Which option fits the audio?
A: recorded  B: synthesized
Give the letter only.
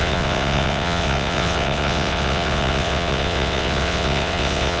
B